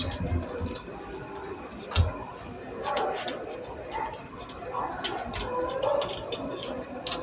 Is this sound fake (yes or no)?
no